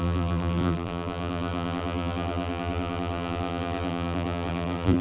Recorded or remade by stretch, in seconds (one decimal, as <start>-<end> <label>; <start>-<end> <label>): 0.0-5.0 remade